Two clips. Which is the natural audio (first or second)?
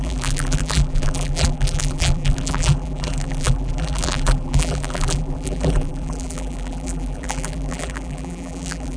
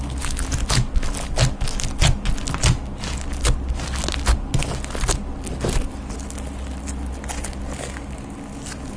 second